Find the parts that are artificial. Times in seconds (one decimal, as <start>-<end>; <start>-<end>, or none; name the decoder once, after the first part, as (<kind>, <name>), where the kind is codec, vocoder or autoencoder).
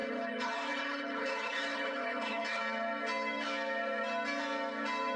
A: 0.0-2.6 (codec, HILCodec)